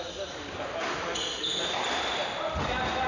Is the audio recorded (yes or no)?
yes